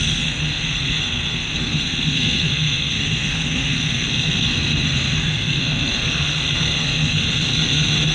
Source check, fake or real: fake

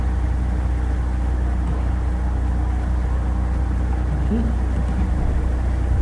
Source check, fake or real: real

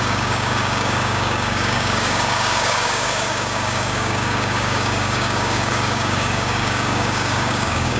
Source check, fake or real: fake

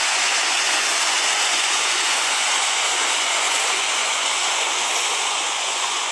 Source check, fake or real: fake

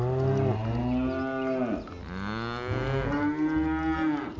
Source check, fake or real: real